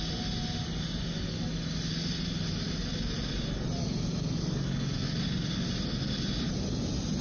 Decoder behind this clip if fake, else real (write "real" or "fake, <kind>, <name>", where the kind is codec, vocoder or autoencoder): real